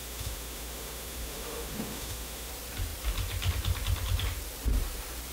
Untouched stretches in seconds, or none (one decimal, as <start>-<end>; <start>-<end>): 2.5-5.3

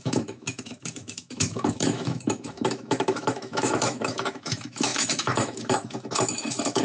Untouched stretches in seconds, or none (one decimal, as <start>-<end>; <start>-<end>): none

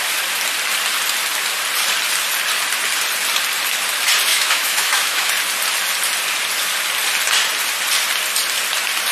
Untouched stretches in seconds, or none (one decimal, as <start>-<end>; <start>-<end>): 0.0-4.3; 5.3-9.1

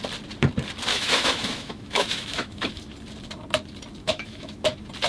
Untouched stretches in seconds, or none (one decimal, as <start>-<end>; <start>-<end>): 0.0-0.9; 2.8-4.0; 4.6-5.1